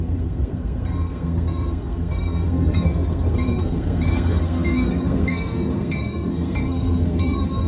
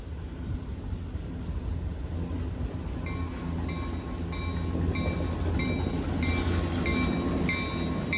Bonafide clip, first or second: second